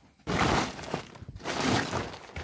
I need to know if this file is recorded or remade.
recorded